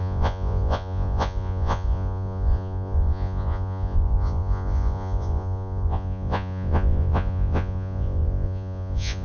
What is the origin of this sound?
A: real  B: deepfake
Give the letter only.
B